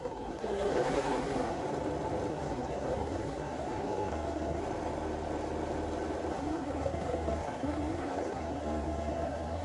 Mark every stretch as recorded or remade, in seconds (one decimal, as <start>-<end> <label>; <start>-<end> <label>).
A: 0.0-1.6 remade; 1.6-2.3 recorded; 2.3-4.6 remade; 4.6-6.3 recorded; 6.3-9.6 remade